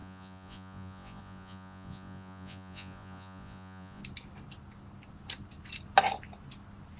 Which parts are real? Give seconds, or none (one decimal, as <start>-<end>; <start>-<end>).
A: 4.0-7.0